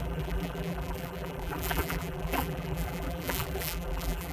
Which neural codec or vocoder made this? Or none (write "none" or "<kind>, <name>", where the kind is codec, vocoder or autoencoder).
vocoder, BigVGAN v2